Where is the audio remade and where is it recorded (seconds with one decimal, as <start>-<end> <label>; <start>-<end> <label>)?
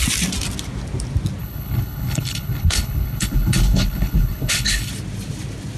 0.0-1.4 recorded; 1.4-4.9 remade; 4.9-5.8 recorded